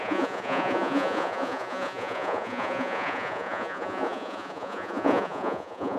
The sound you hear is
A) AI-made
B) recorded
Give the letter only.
A